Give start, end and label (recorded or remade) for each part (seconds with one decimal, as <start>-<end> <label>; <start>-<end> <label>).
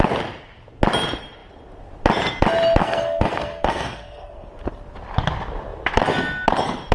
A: 0.0-2.8 recorded; 2.8-4.5 remade; 4.5-6.9 recorded